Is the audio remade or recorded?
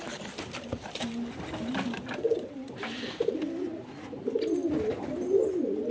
recorded